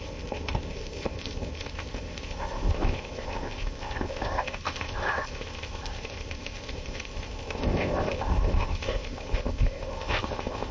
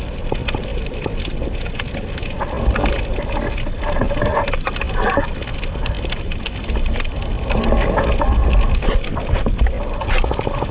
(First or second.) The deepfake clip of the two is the first